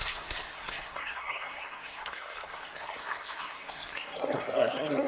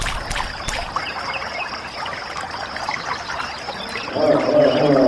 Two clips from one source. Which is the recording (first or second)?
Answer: second